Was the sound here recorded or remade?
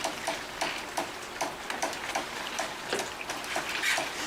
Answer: recorded